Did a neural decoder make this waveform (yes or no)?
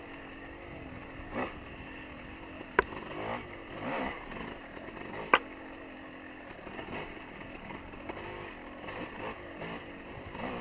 no